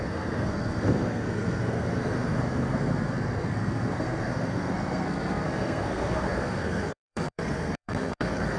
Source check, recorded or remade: remade